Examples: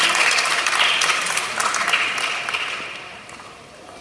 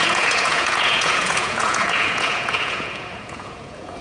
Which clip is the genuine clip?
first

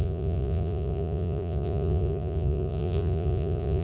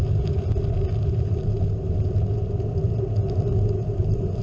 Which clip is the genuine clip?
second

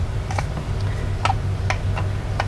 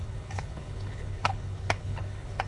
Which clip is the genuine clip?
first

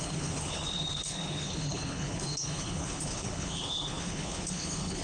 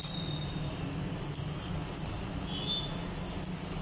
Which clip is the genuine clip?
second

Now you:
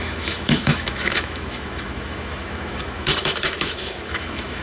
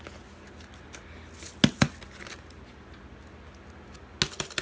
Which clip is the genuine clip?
second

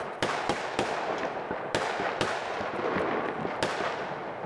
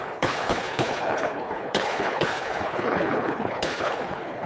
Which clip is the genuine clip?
first